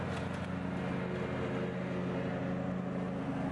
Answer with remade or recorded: recorded